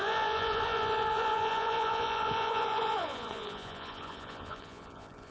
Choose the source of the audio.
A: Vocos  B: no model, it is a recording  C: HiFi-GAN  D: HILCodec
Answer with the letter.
A